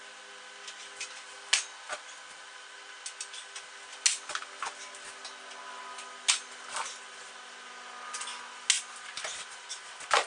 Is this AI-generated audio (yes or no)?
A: no